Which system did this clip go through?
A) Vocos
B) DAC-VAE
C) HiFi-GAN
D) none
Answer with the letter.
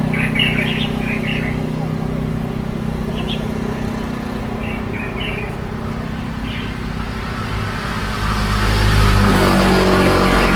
D